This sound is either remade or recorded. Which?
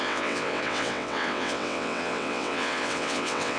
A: remade